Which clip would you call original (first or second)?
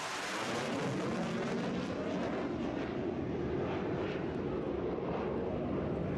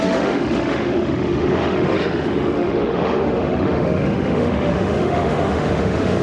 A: first